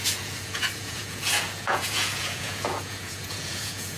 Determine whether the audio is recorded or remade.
remade